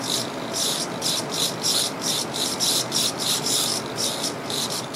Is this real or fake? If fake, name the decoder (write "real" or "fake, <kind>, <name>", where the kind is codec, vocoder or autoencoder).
real